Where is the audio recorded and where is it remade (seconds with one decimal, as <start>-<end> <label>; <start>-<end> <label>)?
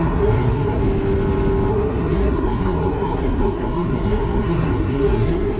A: 0.0-0.8 remade; 0.8-1.7 recorded; 1.7-5.6 remade